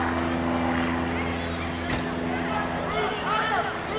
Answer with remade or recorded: recorded